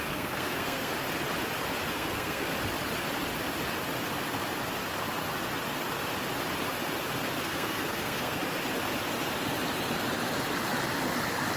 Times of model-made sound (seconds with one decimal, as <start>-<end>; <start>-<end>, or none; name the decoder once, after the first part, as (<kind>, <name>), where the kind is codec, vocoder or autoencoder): 0.0-0.9 (codec, SNAC); 1.9-2.5; 7.4-8.4